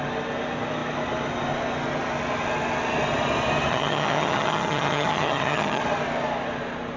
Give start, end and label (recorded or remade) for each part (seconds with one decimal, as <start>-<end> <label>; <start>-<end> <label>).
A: 0.0-3.7 recorded; 3.7-5.8 remade; 5.8-7.0 recorded